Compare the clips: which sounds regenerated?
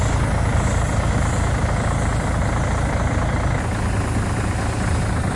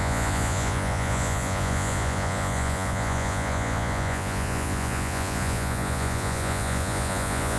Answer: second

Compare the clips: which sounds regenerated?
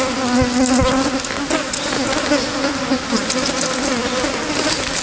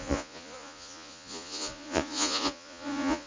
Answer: second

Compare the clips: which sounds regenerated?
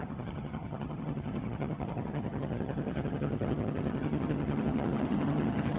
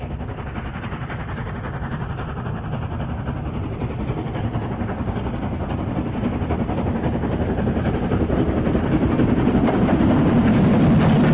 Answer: first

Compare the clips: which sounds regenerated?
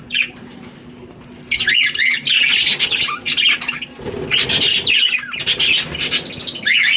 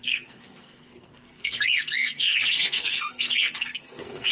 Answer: second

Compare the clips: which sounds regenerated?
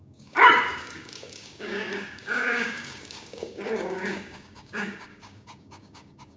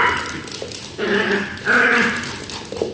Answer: first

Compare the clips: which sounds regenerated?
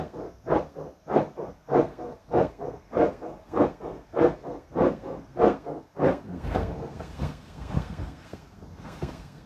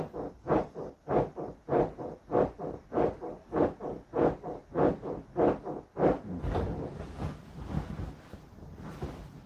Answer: first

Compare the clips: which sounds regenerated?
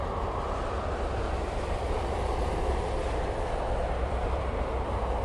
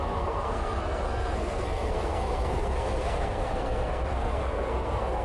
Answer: second